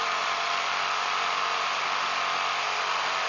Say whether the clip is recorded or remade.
recorded